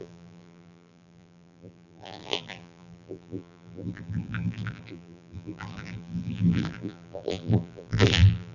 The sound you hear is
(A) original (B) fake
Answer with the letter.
B